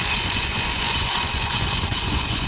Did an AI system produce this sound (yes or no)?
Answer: yes